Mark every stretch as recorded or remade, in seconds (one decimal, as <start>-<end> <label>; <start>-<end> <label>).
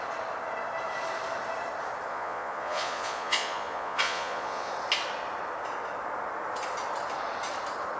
0.0-2.1 recorded; 2.1-4.7 remade; 4.7-8.0 recorded